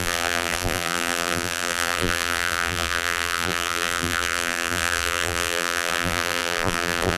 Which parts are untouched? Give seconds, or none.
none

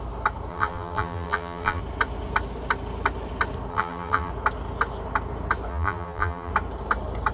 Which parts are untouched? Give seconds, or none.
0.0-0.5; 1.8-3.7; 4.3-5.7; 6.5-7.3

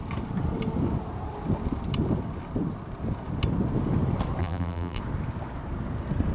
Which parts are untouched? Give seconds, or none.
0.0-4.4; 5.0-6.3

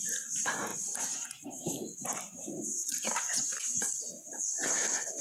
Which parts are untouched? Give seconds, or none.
0.0-0.7; 3.8-5.2